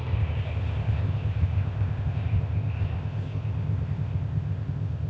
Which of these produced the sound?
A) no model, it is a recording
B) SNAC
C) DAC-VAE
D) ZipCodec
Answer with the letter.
D